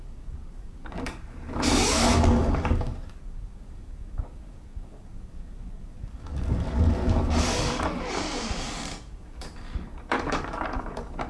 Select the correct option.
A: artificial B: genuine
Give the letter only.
A